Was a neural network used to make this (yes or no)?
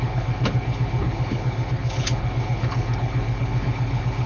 yes